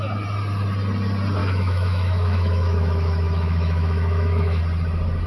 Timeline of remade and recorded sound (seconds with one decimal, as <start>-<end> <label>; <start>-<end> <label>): 0.0-1.4 recorded; 1.4-4.6 remade; 4.6-5.3 recorded